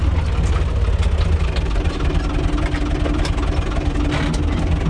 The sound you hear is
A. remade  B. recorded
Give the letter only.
B